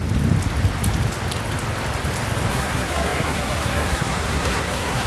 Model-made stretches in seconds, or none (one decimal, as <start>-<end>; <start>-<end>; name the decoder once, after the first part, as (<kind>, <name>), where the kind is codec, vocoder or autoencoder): 2.5-5.1 (codec, SNAC)